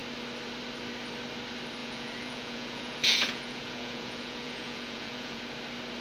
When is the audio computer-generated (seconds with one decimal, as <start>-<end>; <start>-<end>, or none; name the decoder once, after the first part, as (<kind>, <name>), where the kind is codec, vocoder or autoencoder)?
1.8-5.4 (vocoder, Vocos)